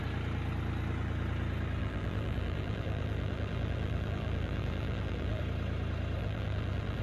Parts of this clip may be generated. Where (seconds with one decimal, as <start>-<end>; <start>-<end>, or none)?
1.8-5.4; 6.2-7.0